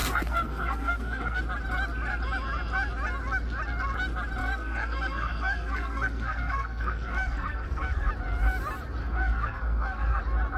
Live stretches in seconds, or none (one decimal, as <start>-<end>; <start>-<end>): 1.4-4.4; 8.1-9.0; 10.2-10.6